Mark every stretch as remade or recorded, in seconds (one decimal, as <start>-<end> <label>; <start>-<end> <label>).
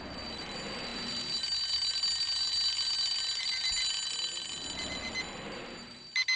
0.0-6.4 recorded